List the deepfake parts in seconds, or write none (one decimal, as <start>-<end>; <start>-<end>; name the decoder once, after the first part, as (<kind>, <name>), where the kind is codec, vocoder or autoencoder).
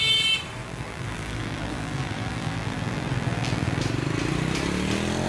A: 0.6-3.8 (vocoder, BigVGAN v2)